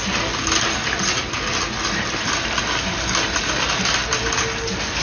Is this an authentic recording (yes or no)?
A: yes